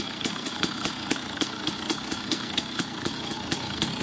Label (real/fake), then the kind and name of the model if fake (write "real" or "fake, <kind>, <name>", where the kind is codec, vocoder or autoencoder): fake, codec, SNAC